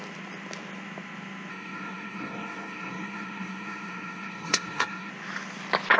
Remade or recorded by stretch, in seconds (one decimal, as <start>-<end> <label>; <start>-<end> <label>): 0.0-1.5 recorded; 1.5-5.1 remade; 5.1-6.0 recorded